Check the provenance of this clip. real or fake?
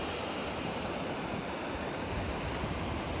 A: real